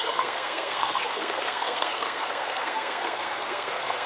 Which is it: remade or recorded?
remade